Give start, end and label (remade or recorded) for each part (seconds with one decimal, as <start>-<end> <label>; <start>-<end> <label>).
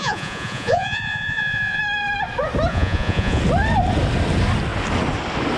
0.0-1.8 remade; 1.8-2.7 recorded; 2.7-3.4 remade; 3.4-5.6 recorded